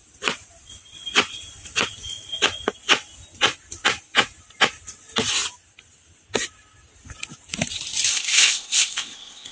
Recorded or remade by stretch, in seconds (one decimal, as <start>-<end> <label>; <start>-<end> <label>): 0.0-8.1 recorded; 8.1-9.5 remade